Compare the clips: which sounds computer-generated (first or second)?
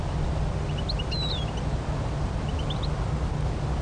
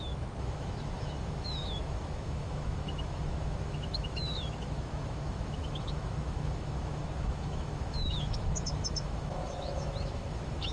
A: second